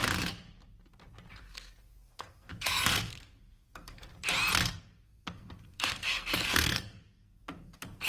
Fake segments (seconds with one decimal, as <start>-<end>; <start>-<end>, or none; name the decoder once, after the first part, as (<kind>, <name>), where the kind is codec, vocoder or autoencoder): 1.4-4.1 (codec, SNAC); 4.7-8.1